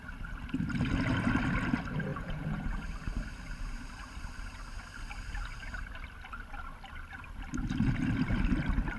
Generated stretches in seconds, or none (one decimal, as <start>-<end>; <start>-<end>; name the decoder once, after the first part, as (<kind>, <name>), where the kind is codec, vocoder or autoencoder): 2.1-2.7 (vocoder, Vocos)

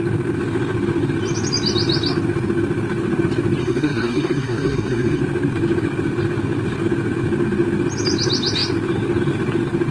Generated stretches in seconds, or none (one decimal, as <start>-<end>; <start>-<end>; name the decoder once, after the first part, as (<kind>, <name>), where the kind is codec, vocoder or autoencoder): 3.6-5.2 (codec, SNAC)

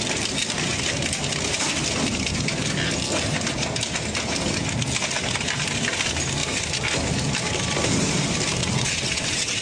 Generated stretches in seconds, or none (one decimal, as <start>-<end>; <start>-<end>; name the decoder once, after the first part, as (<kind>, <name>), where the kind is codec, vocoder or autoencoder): 8.6-9.6 (vocoder, WaveNeXt)

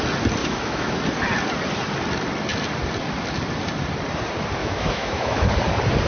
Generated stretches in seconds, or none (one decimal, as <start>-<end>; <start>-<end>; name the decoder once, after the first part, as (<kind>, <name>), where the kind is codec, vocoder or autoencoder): 0.4-1.0 (autoencoder, DAC-VAE); 4.6-5.5

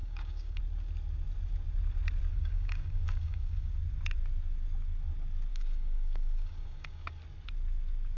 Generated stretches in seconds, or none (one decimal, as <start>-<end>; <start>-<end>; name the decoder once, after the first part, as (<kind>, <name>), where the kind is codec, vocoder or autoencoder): 0.0-0.6 (codec, DAC); 2.3-3.7; 5.5-7.2

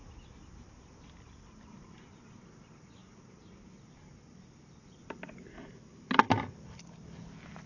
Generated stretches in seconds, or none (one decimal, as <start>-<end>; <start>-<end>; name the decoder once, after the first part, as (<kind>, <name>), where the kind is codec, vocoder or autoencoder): none

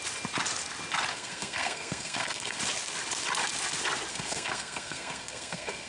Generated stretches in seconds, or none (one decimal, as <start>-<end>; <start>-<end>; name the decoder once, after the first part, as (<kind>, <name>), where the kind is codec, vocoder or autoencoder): 1.1-2.6 (codec, SNAC); 4.1-5.9